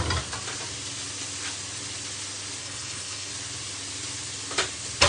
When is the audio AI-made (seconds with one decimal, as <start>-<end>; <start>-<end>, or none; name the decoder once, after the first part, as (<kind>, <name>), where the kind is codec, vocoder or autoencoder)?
2.6-3.3 (codec, HILCodec)